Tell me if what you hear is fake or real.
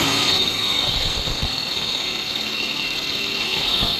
fake